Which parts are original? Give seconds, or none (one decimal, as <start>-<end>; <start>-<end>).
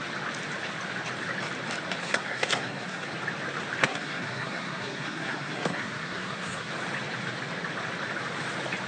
0.0-2.0; 3.1-3.8; 6.7-8.9